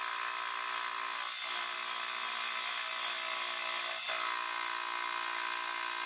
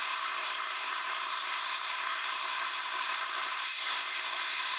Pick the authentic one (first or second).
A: first